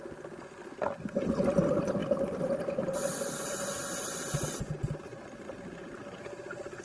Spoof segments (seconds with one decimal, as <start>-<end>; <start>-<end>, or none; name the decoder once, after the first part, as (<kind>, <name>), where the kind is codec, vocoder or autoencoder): none